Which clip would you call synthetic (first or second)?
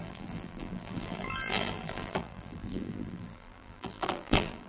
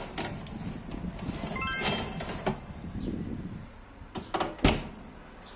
first